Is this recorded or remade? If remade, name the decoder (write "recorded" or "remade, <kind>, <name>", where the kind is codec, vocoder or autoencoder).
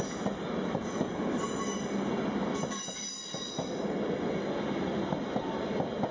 recorded